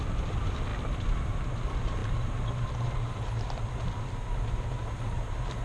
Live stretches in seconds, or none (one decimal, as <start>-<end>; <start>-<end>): 0.0-5.6